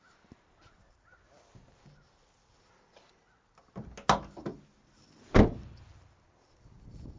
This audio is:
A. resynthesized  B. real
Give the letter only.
B